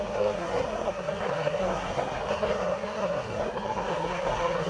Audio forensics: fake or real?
fake